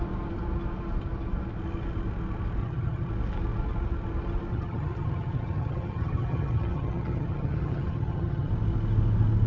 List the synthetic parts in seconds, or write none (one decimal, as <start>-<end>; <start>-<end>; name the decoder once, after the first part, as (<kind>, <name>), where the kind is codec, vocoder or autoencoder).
2.6-3.1 (vocoder, HiFi-GAN); 4.5-8.5